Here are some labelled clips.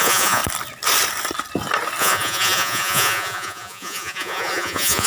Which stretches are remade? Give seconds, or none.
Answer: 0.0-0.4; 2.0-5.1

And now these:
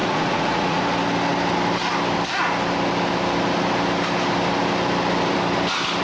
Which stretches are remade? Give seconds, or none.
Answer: 0.0-0.8

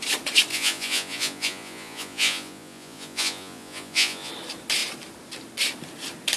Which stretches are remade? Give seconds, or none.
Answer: 0.5-4.3

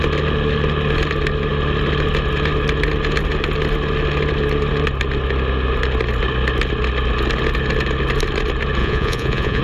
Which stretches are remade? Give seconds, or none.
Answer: 8.8-9.6

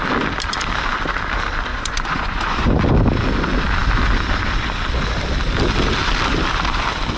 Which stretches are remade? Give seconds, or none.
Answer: 1.7-2.8

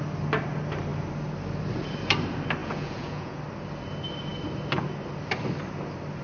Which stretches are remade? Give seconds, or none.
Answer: 2.6-3.4